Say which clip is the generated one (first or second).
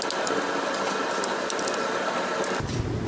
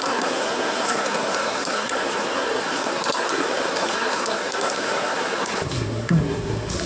second